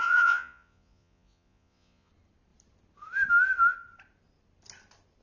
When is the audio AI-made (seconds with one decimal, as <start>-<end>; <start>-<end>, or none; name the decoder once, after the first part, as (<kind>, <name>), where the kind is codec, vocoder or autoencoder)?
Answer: 0.0-2.1 (vocoder, Vocos)